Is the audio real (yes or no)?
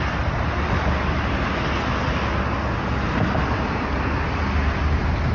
yes